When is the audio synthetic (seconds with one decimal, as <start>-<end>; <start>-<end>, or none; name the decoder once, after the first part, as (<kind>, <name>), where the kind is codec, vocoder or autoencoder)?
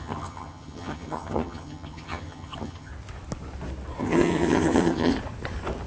0.0-2.9 (vocoder, HiFi-GAN); 4.0-5.1